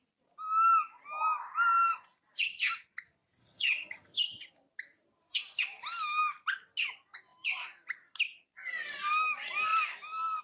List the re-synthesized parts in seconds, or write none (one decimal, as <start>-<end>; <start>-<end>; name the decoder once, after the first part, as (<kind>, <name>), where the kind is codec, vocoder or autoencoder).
3.4-4.2 (vocoder, HiFi-GAN)